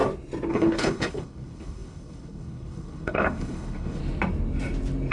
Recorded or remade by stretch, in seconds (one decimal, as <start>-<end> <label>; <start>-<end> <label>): 0.0-0.5 recorded; 0.5-4.0 remade; 4.0-5.1 recorded